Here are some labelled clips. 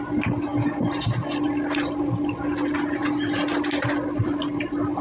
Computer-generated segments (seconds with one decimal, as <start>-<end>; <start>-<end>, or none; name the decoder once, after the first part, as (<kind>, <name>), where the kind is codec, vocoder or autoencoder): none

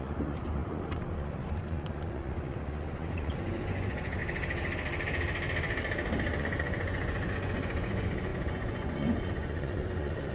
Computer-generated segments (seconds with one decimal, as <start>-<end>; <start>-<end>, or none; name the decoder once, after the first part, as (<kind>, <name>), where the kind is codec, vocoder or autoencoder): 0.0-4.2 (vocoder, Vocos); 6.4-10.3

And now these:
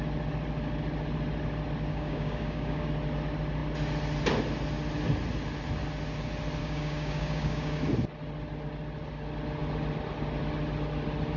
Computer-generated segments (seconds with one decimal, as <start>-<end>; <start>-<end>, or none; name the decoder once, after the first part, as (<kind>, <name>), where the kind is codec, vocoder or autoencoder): 1.9-2.9 (codec, DAC); 6.6-7.8

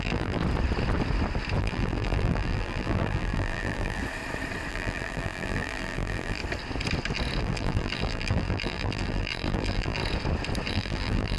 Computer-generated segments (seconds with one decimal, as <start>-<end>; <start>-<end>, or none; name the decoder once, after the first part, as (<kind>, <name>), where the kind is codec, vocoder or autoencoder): 0.0-0.4 (vocoder, BigVGAN v2); 1.6-4.0; 4.7-6.4; 7.4-10.0; 10.7-11.4

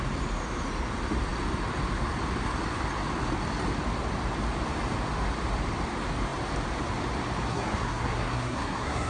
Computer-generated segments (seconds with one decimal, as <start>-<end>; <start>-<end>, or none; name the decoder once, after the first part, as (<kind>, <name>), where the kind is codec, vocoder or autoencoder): 7.5-9.1 (codec, SNAC)

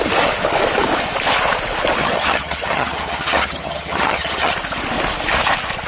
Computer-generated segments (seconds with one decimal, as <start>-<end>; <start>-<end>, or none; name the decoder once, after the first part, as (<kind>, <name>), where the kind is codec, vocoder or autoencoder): 2.0-4.5 (vocoder, HiFi-GAN)

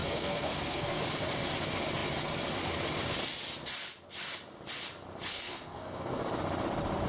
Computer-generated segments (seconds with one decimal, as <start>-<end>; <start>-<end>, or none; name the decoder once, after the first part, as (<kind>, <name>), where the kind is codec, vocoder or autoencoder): 0.0-1.0 (codec, SNAC); 5.3-6.2